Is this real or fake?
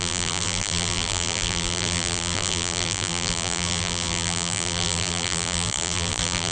fake